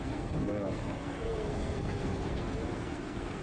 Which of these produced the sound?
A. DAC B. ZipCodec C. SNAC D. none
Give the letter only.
C